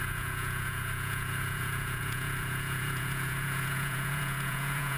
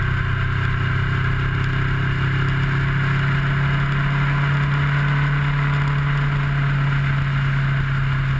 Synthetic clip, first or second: first